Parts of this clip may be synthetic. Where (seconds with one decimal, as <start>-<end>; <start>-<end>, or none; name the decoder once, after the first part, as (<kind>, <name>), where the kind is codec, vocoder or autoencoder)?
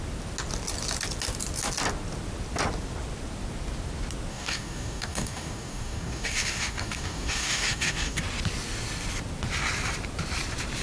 4.3-8.2 (codec, DAC)